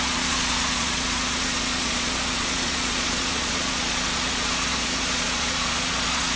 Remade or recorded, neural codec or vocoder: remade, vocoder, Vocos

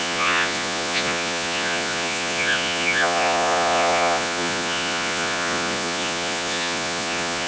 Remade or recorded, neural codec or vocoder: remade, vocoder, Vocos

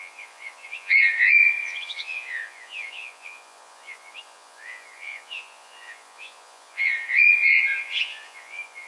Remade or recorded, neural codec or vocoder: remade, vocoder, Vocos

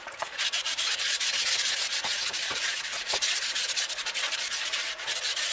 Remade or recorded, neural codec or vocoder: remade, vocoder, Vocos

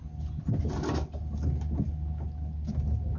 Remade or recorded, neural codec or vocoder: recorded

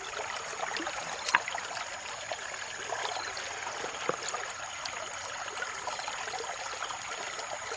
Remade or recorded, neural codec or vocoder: recorded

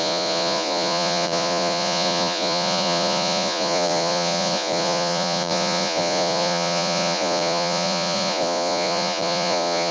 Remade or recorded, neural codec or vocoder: remade, vocoder, Vocos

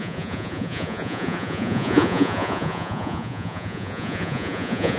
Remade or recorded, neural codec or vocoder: remade, vocoder, Vocos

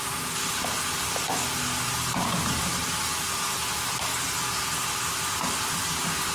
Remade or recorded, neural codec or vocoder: recorded